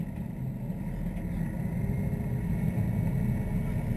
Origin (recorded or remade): recorded